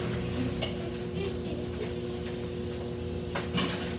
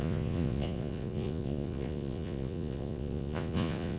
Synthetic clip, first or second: second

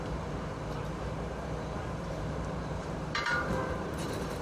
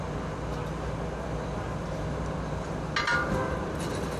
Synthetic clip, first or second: first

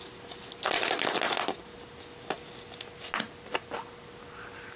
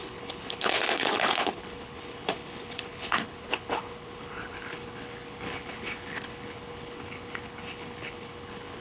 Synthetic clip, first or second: second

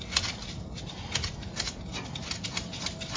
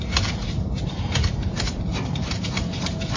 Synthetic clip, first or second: second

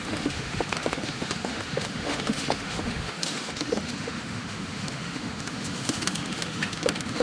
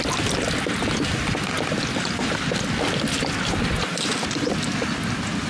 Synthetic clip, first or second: first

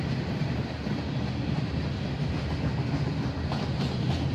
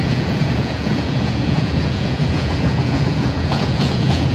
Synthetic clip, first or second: second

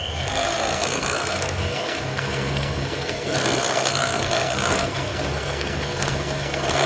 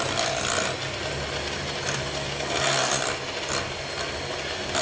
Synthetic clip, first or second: first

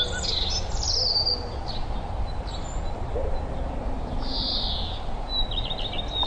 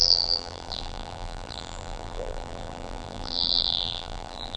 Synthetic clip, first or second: second